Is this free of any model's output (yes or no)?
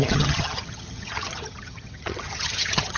no